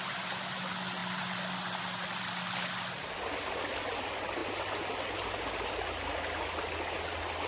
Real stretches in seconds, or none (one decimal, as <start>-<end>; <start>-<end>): 0.0-7.5